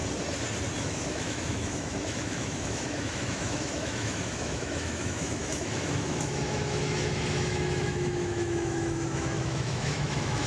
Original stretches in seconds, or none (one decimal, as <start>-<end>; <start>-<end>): 0.0-0.8